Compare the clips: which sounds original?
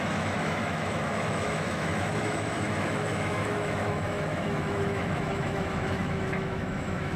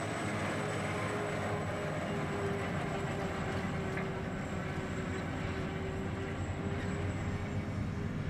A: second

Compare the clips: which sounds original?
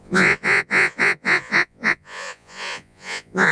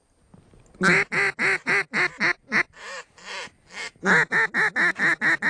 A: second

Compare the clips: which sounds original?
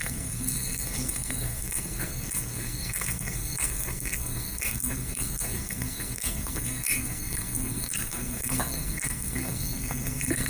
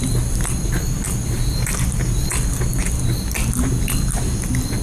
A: second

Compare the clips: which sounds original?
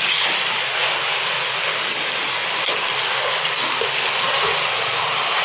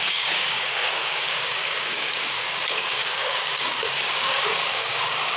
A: first